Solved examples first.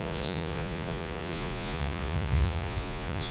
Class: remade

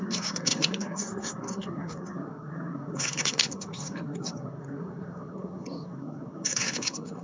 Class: remade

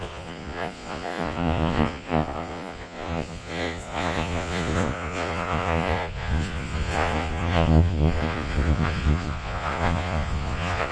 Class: remade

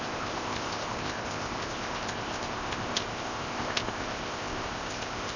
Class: remade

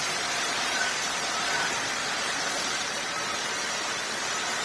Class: remade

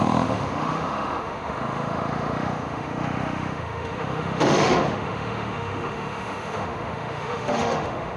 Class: remade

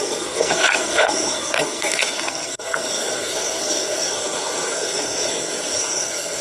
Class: remade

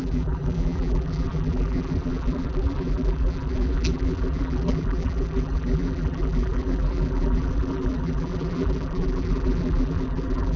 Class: remade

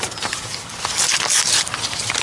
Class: recorded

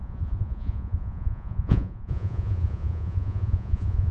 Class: remade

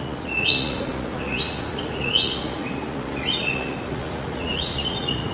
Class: remade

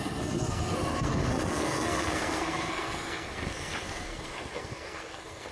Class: remade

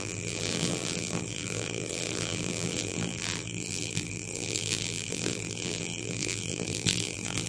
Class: remade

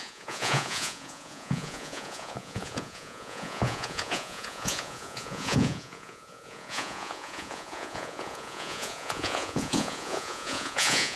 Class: remade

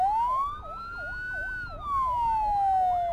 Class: recorded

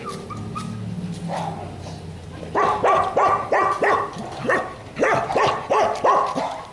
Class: recorded